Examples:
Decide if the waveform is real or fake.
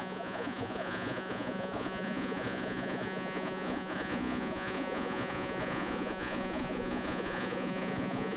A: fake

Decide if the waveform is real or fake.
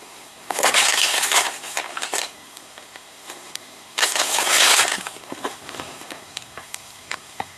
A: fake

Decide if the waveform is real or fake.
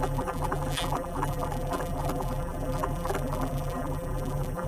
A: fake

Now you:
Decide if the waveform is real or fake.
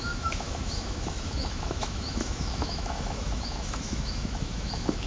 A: fake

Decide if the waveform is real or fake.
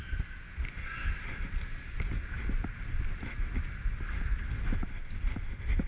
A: real